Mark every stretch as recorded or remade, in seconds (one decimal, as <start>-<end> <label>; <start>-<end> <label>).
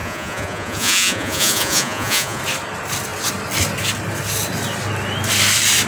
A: 0.0-2.4 remade; 2.4-5.9 recorded